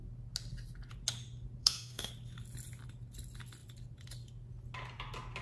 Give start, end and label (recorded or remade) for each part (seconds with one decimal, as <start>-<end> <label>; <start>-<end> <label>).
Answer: 0.0-1.6 recorded; 1.6-2.1 remade; 2.1-5.4 recorded